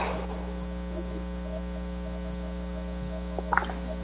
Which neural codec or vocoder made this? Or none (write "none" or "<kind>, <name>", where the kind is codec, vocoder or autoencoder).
none